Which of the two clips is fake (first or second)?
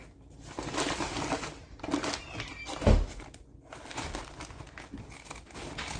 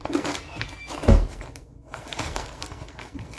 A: second